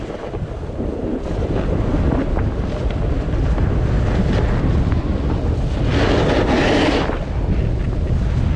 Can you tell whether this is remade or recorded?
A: recorded